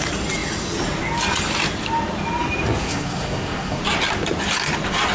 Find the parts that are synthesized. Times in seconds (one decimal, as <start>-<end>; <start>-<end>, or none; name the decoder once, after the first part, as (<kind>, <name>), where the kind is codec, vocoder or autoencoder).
2.8-3.8 (codec, SNAC)